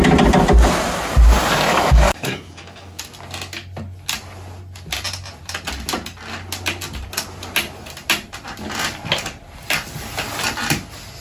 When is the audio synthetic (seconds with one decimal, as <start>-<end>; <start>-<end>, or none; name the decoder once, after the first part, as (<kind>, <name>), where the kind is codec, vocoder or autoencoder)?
1.7-3.0 (codec, DAC)